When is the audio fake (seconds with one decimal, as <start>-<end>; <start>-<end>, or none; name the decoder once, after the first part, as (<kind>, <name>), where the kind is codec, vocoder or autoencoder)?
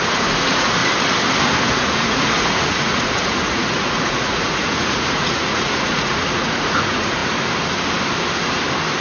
0.0-0.8 (vocoder, Vocos); 1.7-7.2